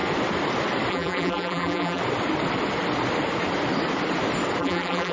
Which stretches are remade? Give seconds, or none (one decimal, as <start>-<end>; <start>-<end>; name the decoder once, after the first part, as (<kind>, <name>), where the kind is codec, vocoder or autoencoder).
0.9-2.0 (vocoder, BigVGAN v2); 4.6-5.1